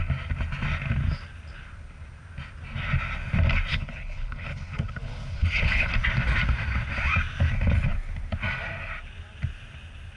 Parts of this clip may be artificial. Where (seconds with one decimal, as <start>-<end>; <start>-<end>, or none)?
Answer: 3.7-5.9